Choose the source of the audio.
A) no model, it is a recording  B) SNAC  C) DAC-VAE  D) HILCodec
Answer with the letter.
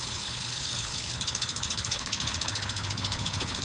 D